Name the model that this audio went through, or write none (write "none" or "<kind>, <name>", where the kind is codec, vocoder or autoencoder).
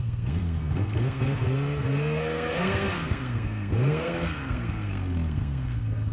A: codec, SNAC